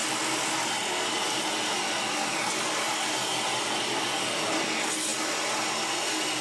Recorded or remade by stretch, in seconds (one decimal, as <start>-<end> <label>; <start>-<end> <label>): 0.0-3.6 recorded; 3.6-5.1 remade; 5.1-6.4 recorded